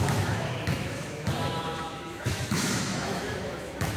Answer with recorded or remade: remade